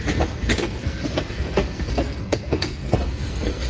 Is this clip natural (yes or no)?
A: no